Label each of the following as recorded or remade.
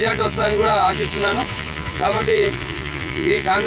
remade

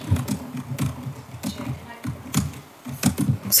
recorded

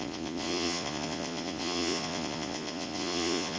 remade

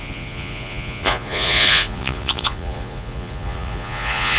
remade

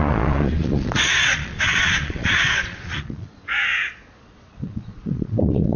remade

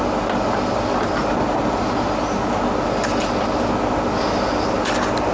recorded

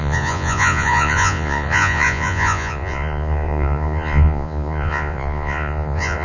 remade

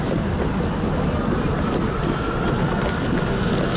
recorded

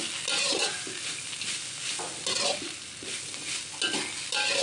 recorded